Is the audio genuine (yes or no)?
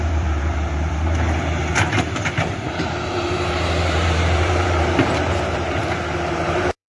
no